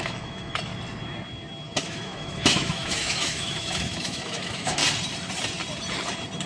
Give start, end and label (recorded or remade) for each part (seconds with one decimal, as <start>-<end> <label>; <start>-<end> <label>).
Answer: 0.0-0.7 remade; 0.7-1.8 recorded; 1.8-4.8 remade; 4.8-6.5 recorded